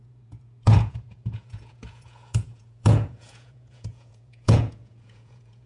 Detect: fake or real fake